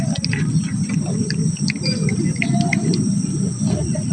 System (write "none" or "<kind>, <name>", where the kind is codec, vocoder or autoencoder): none